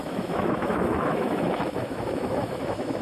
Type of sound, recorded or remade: remade